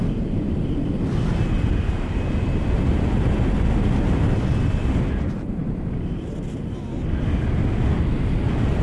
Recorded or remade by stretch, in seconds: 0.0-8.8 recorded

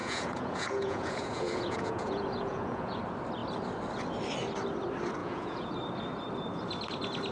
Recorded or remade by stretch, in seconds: 0.0-3.0 remade; 3.0-5.2 recorded; 5.2-5.7 remade; 5.7-7.3 recorded

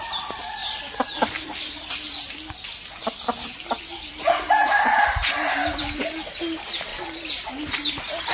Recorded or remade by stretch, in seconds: 0.0-8.3 recorded